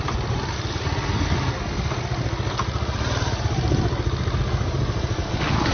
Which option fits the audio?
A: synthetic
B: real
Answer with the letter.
B